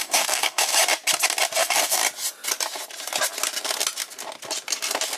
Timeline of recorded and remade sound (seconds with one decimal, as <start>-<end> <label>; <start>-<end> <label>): 0.0-0.7 remade; 0.7-1.6 recorded; 1.6-2.0 remade; 2.0-5.2 recorded